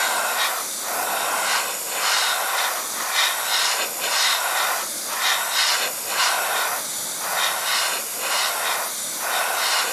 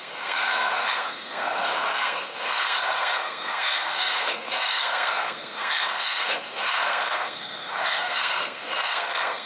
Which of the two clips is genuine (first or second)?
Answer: first